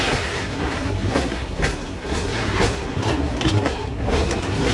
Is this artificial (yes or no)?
yes